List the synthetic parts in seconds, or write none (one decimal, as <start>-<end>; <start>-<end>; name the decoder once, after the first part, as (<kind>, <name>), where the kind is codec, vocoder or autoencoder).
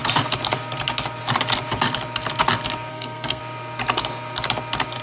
2.9-3.4 (codec, SNAC)